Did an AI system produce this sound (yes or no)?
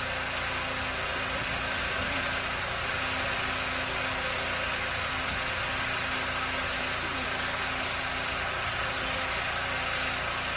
no